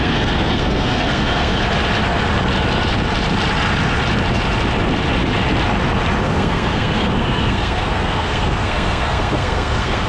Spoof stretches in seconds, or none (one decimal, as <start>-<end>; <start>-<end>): 0.0-1.5; 6.2-10.1